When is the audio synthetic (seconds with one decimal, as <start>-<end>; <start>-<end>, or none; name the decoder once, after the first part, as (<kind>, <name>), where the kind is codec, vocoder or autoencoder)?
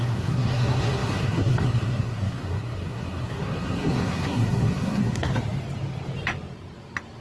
0.0-5.3 (codec, SNAC)